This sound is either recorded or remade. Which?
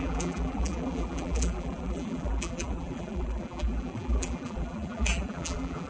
remade